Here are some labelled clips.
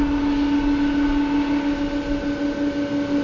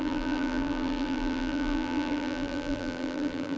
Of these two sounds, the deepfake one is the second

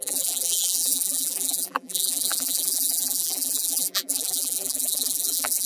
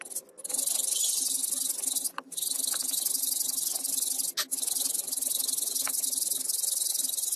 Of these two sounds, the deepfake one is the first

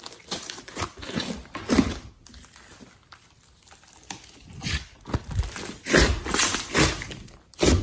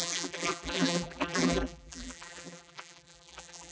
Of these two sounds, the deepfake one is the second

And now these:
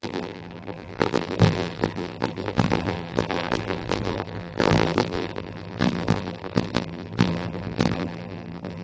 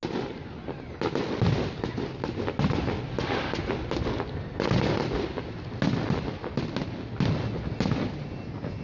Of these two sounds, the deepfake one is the first